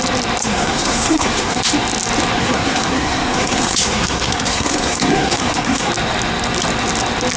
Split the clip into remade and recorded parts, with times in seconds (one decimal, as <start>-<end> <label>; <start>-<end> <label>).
0.0-0.4 recorded; 0.4-1.6 remade; 1.6-2.4 recorded; 2.4-5.9 remade; 5.9-7.4 recorded